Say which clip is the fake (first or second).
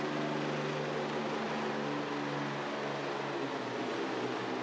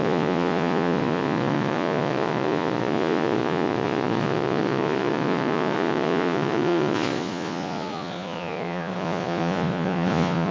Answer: second